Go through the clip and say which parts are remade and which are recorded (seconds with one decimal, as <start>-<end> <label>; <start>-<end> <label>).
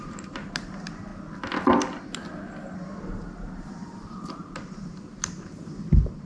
0.0-1.1 remade; 1.1-2.9 recorded; 2.9-6.3 remade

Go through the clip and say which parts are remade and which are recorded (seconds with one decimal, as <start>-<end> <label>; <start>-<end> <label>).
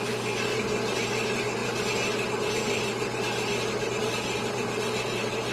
0.0-5.5 recorded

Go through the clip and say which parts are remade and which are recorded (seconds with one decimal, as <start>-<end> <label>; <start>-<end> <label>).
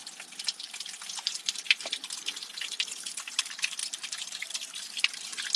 0.0-0.6 recorded; 0.6-5.6 remade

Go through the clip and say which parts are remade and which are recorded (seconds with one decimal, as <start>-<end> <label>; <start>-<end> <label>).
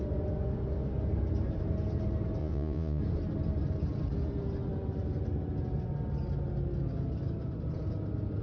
0.0-2.4 recorded; 2.4-3.0 remade; 3.0-8.4 recorded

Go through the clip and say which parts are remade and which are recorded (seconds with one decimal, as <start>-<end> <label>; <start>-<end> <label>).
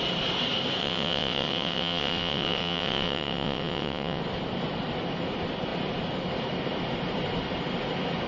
0.0-0.8 recorded; 0.8-4.2 remade; 4.2-8.3 recorded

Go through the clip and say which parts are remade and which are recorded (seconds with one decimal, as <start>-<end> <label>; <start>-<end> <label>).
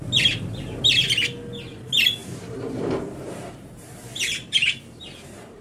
0.0-2.2 recorded; 2.2-5.6 remade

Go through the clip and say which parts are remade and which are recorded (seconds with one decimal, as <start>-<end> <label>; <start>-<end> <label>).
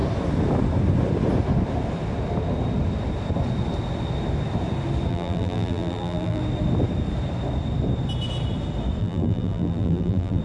0.0-5.1 recorded; 5.1-6.4 remade; 6.4-9.0 recorded; 9.0-10.4 remade